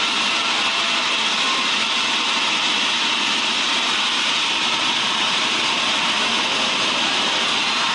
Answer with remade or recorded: remade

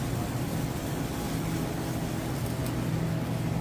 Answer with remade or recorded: recorded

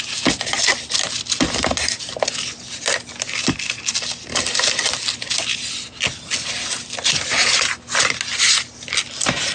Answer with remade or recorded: recorded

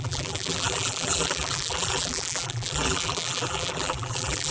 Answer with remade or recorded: remade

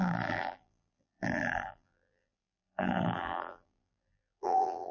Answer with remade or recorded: remade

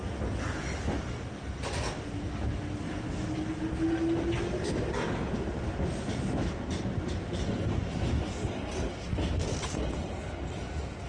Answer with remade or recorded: recorded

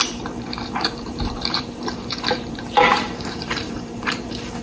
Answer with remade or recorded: remade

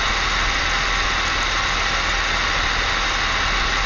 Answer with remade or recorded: recorded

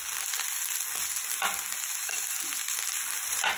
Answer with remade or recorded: recorded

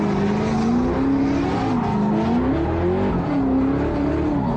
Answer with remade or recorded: recorded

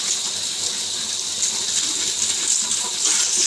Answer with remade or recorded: recorded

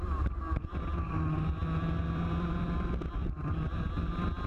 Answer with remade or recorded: recorded